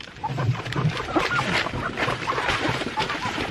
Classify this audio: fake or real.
fake